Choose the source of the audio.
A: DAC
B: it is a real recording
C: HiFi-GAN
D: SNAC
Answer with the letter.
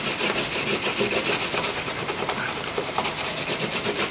B